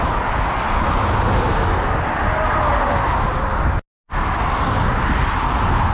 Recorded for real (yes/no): yes